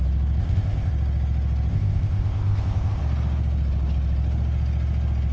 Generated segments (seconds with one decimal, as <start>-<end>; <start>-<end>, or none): 0.4-0.9; 1.7-3.0